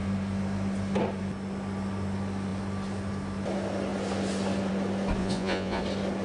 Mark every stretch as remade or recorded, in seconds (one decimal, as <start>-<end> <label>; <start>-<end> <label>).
0.0-5.2 recorded; 5.2-5.8 remade; 5.8-6.2 recorded